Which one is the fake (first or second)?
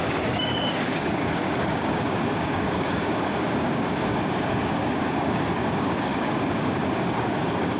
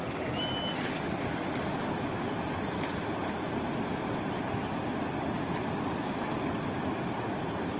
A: first